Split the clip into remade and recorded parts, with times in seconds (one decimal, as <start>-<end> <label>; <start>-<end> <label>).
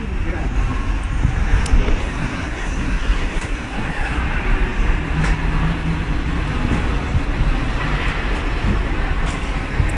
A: 0.0-2.0 recorded; 2.0-4.2 remade; 4.2-10.0 recorded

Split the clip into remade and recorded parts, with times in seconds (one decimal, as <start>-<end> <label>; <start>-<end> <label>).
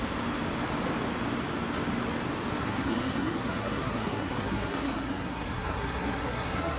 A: 0.0-2.6 recorded; 2.6-6.8 remade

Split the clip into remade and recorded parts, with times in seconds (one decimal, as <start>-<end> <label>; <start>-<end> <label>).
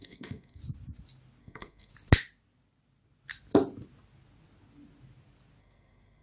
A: 0.0-0.6 remade; 0.6-1.4 recorded; 1.4-1.9 remade; 1.9-5.6 recorded; 5.6-6.2 remade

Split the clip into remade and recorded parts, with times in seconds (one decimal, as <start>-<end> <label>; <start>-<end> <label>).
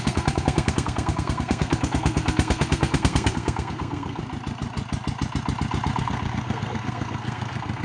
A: 0.0-4.2 remade; 4.2-6.0 recorded; 6.0-7.8 remade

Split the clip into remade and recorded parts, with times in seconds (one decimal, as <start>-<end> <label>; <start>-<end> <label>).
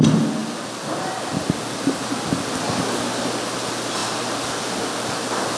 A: 0.0-5.6 recorded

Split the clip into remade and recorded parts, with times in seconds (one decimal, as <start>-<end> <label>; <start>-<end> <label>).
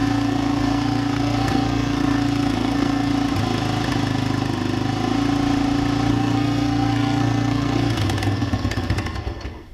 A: 0.0-3.1 remade; 3.1-6.1 recorded; 6.1-9.7 remade